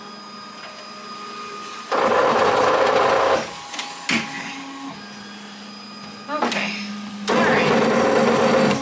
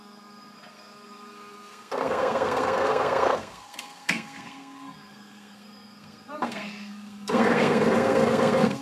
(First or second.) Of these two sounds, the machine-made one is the second